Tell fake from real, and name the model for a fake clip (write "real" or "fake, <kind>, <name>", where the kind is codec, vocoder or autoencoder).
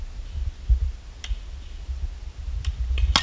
real